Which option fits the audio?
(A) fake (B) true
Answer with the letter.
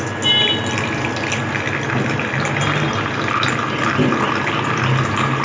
B